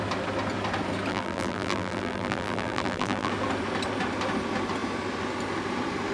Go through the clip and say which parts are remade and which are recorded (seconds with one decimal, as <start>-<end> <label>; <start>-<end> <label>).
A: 0.0-1.1 recorded; 1.1-3.3 remade; 3.3-6.1 recorded